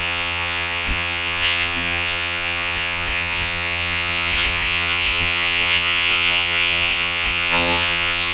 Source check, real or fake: fake